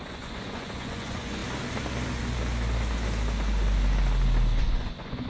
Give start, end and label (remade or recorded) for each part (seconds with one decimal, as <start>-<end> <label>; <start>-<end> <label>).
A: 0.0-1.4 remade; 1.4-4.6 recorded; 4.6-5.3 remade